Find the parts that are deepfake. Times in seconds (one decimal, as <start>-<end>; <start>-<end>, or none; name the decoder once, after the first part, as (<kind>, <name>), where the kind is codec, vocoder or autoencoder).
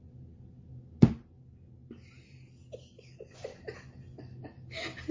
none